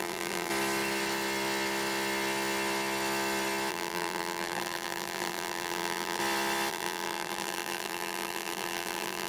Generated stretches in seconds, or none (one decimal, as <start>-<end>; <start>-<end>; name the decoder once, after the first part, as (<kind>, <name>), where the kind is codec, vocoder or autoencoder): 0.0-0.5 (vocoder, BigVGAN v2); 3.7-6.2; 6.7-9.3